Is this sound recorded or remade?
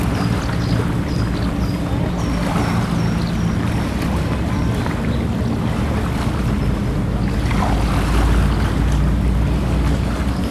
recorded